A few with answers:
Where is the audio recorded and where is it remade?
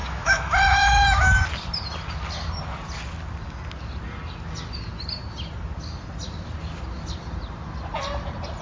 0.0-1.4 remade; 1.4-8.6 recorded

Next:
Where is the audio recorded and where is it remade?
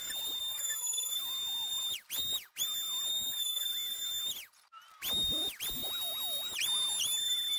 0.0-0.4 recorded; 0.4-1.1 remade; 1.1-3.1 recorded; 3.1-3.7 remade; 3.7-7.6 recorded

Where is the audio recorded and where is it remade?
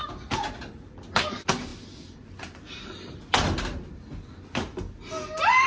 0.0-5.7 recorded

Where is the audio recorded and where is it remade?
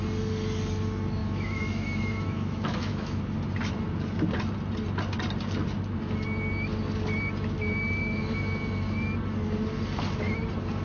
0.0-1.2 recorded; 1.2-3.2 remade; 3.2-10.8 recorded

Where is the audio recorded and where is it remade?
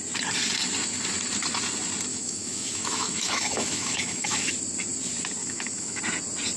0.0-2.1 recorded; 2.1-4.5 remade; 4.5-5.4 recorded; 5.4-6.0 remade; 6.0-6.6 recorded